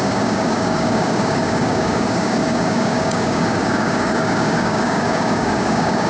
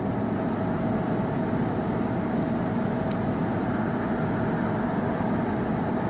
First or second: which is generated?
first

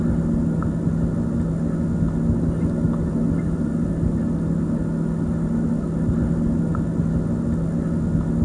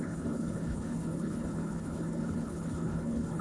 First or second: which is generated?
second